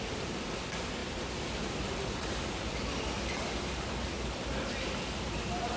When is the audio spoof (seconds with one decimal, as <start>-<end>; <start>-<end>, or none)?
none